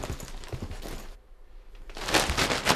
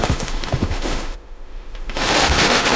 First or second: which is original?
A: first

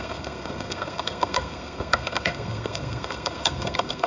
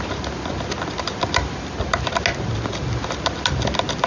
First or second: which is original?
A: second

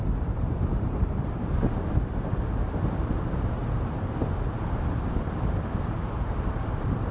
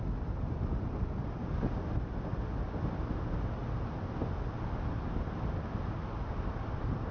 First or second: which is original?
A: second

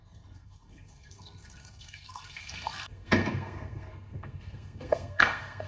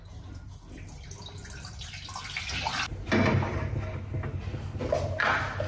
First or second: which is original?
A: second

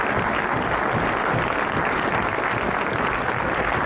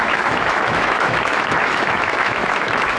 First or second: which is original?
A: first